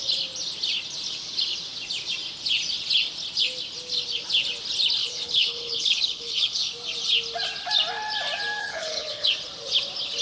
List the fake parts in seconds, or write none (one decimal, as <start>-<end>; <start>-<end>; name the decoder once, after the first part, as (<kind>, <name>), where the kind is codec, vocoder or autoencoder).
5.0-6.7 (codec, HILCodec); 8.6-9.3